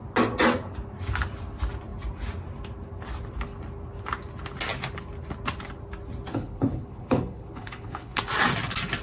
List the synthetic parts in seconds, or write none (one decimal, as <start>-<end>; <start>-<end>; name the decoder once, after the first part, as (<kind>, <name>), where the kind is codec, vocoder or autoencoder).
6.3-8.2 (codec, HILCodec)